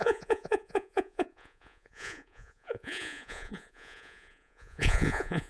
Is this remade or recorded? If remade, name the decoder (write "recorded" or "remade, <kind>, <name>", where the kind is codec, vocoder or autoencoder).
remade, vocoder, Vocos